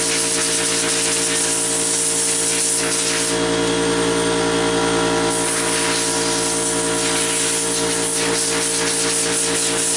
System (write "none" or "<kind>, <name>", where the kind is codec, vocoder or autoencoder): none